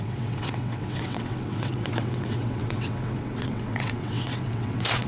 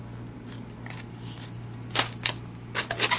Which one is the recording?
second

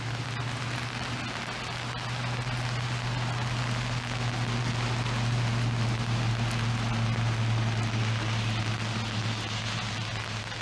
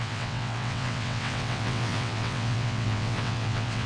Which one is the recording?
first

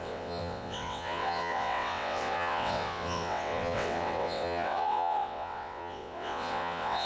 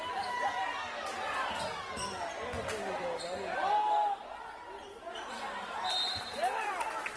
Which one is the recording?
second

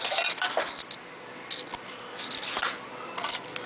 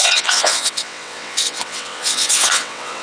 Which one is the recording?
first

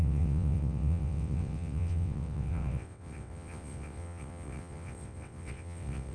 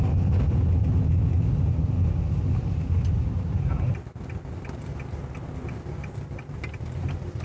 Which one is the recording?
second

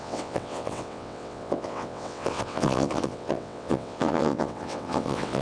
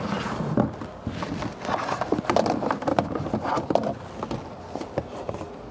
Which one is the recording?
second